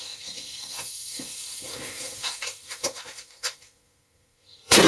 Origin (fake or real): fake